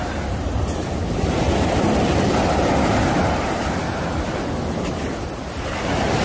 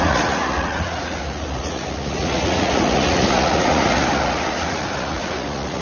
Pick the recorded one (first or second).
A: first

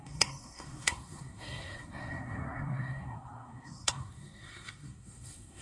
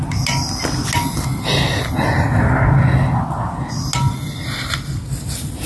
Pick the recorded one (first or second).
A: second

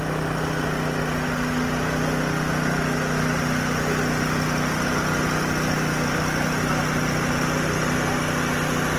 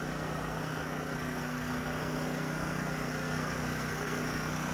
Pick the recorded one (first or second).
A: first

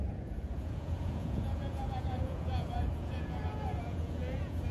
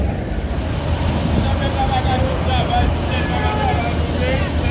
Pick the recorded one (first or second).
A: second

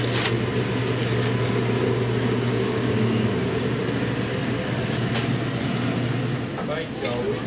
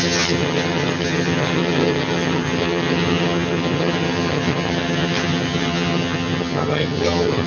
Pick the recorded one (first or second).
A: first